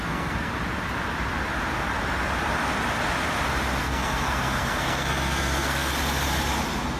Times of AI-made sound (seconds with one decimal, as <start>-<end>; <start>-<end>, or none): 0.0-0.5; 3.8-5.9